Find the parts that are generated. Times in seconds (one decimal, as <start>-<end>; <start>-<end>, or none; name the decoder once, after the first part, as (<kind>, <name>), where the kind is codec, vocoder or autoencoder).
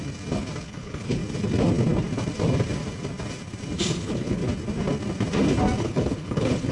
0.6-1.2 (codec, HILCodec); 3.9-4.4; 5.8-6.7